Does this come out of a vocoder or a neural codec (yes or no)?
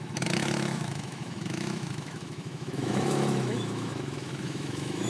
yes